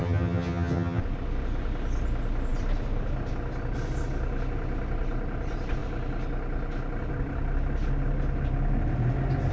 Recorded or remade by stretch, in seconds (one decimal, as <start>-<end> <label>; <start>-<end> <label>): 0.0-1.0 remade; 1.0-9.5 recorded

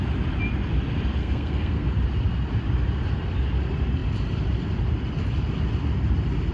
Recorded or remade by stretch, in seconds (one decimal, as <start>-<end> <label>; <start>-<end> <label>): 0.0-1.2 recorded; 1.2-2.0 remade; 2.0-6.5 recorded

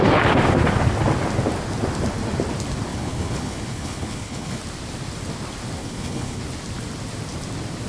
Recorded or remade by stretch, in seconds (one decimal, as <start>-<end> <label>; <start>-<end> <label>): 0.0-2.9 recorded; 2.9-4.6 remade; 4.6-5.8 recorded; 5.8-6.4 remade; 6.4-7.9 recorded

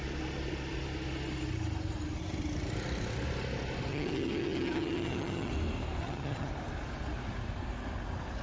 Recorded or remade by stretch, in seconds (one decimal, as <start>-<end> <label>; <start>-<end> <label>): 0.0-3.9 recorded; 3.9-5.5 remade; 5.5-6.0 recorded; 6.0-6.5 remade; 6.5-8.4 recorded

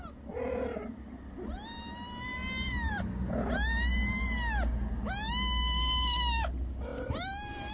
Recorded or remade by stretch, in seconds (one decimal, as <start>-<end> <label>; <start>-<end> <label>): 0.0-7.7 recorded

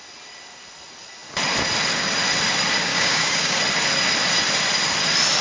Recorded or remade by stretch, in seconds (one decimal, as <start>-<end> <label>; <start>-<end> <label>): 0.0-2.9 recorded; 2.9-3.6 remade; 3.6-5.4 recorded

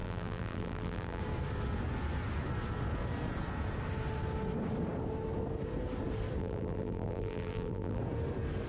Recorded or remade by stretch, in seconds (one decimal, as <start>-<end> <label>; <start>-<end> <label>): 0.0-1.2 remade; 1.2-6.4 recorded; 6.4-8.0 remade; 8.0-8.7 recorded